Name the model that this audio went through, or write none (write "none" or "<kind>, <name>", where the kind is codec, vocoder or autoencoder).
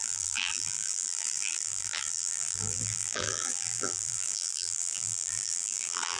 vocoder, BigVGAN v2